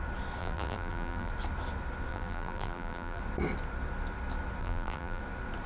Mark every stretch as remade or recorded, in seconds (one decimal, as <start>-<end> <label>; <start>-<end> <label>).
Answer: 0.0-0.4 recorded; 0.4-1.3 remade; 1.3-2.1 recorded; 2.1-3.2 remade; 3.2-4.6 recorded; 4.6-5.2 remade; 5.2-5.7 recorded